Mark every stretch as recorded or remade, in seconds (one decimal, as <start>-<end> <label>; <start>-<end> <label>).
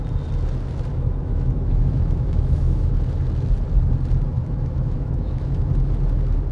0.0-0.9 recorded; 0.9-2.9 remade; 2.9-4.4 recorded; 4.4-5.7 remade; 5.7-6.5 recorded